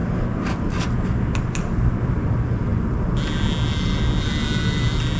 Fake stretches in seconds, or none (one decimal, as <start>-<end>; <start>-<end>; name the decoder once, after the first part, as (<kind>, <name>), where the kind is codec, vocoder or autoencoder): none